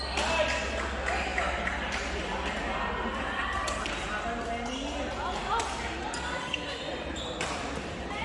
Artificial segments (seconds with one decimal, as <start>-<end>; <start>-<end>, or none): none